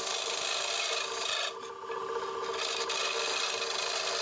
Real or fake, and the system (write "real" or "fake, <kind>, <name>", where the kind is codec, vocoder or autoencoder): real